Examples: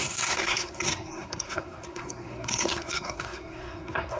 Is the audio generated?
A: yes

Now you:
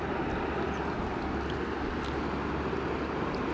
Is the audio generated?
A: no